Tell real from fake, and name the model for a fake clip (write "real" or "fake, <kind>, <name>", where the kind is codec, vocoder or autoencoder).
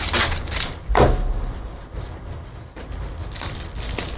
real